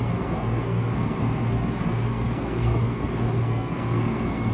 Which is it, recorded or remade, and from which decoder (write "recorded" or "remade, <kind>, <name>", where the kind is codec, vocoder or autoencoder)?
remade, codec, SNAC